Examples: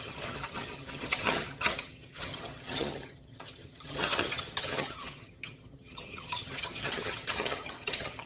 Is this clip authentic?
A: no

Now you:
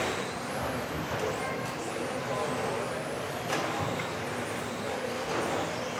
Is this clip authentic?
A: yes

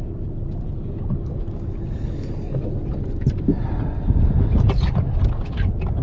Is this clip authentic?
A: yes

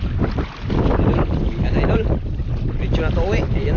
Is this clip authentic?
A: yes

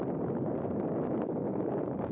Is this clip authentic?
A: yes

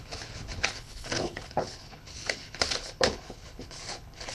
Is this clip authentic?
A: no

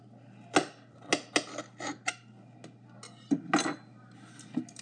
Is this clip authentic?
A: yes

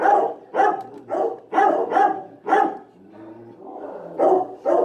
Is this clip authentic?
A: yes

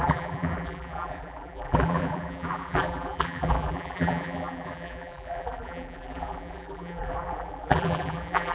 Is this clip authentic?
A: no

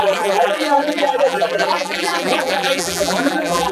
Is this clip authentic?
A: no